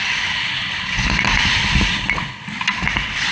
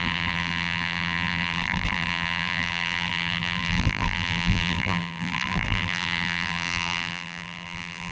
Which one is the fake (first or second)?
second